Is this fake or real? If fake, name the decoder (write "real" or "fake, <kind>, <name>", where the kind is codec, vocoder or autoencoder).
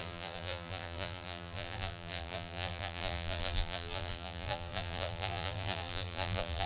fake, vocoder, BigVGAN v2